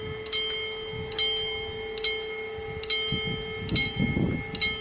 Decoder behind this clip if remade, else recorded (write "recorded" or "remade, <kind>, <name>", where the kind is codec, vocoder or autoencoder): recorded